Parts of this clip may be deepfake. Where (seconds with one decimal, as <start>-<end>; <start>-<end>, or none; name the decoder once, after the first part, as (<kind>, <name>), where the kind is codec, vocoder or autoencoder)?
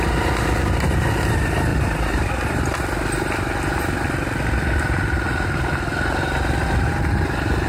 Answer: 1.7-2.6 (vocoder, BigVGAN v2)